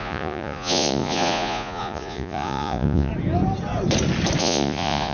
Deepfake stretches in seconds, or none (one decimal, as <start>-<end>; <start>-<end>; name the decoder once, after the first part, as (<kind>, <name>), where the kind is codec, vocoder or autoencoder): 0.0-3.1 (vocoder, Vocos); 4.4-5.1

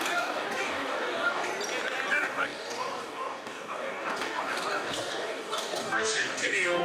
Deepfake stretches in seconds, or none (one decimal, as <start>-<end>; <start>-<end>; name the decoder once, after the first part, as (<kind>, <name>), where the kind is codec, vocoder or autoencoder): 0.0-1.5 (codec, DAC); 2.1-6.8

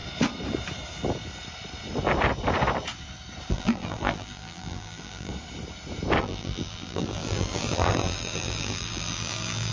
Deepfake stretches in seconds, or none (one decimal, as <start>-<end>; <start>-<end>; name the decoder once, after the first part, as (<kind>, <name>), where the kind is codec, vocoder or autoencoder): 3.5-5.3 (vocoder, BigVGAN v2); 6.2-9.7

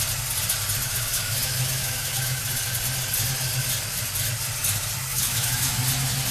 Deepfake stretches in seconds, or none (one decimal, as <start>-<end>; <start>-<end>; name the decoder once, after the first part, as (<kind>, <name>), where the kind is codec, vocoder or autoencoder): 0.8-2.4 (autoencoder, DAC-VAE); 5.1-5.8

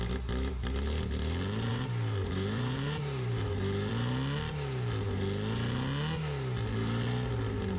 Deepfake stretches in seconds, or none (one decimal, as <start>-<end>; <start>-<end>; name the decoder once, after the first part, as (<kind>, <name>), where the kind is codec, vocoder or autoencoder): 1.7-3.9 (vocoder, BigVGAN v2)

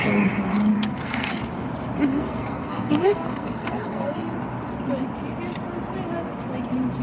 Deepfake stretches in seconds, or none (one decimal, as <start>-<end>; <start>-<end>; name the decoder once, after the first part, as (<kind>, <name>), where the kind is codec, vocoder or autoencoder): 0.7-1.4 (codec, SNAC); 2.1-4.2

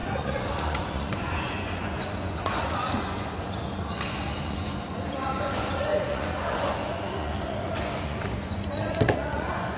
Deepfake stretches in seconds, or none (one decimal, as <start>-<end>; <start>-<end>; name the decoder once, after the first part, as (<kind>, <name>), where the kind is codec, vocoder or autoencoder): 0.0-9.8 (vocoder, Vocos)

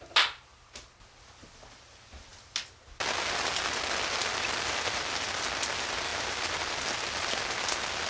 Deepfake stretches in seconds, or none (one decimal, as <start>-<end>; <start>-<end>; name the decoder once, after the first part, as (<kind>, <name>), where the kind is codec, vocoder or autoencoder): none